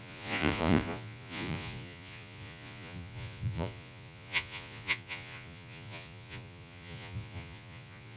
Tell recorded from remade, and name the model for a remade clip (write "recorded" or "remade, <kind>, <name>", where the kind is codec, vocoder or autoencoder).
remade, vocoder, Vocos